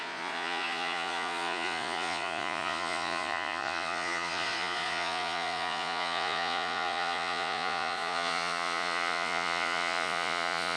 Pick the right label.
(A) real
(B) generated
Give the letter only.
B